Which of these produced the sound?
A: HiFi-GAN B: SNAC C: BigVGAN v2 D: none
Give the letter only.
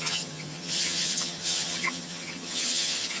A